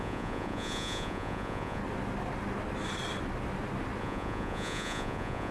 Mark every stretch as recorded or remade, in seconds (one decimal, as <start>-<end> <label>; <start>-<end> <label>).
0.0-1.8 remade; 1.8-4.0 recorded; 4.0-5.5 remade